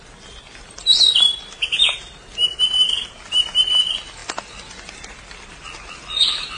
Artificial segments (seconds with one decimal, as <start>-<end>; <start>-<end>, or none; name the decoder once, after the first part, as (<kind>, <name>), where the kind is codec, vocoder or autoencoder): none